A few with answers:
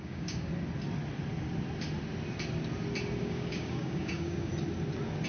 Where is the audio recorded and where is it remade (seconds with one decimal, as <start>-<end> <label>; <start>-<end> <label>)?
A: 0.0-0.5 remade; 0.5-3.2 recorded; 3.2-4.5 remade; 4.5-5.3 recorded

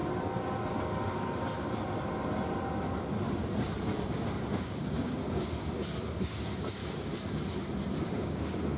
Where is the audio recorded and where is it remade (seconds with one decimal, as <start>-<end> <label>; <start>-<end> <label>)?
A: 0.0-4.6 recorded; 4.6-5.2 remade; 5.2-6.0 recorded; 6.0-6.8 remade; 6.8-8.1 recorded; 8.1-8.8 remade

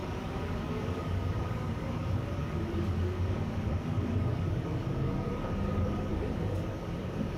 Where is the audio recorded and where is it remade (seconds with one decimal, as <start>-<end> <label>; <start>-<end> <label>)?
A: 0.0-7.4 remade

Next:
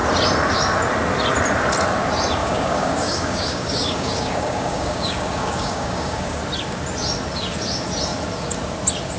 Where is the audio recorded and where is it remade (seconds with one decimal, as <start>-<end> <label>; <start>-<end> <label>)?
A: 0.0-2.4 recorded; 2.4-6.4 remade; 6.4-9.2 recorded